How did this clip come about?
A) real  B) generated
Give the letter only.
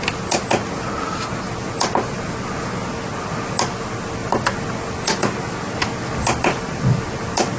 A